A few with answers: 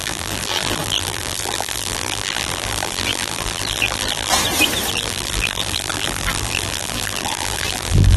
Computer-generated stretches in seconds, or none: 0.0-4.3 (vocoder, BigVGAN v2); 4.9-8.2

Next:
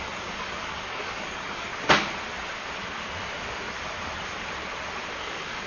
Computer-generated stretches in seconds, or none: 0.0-1.7 (codec, DAC); 5.1-5.7

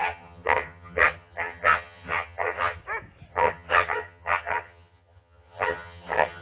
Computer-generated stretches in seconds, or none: 0.0-2.8 (vocoder, HiFi-GAN); 3.3-6.4

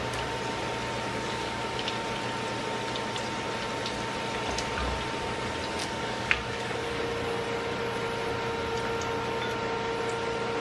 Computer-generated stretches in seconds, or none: 1.1-1.8 (codec, DAC); 5.8-7.0